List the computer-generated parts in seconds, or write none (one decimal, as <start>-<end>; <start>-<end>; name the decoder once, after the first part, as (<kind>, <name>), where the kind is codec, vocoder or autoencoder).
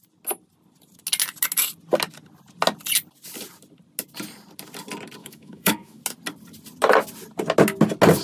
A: 5.2-6.0 (autoencoder, DAC-VAE)